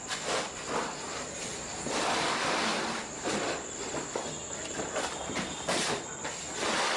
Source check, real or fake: real